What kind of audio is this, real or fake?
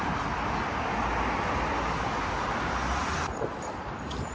real